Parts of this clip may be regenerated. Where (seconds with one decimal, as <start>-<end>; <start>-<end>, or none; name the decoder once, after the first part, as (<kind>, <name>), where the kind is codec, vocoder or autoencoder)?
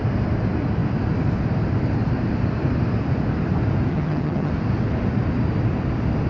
3.9-4.5 (vocoder, HiFi-GAN)